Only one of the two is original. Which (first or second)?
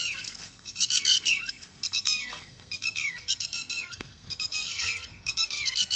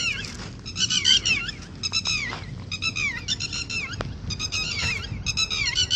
second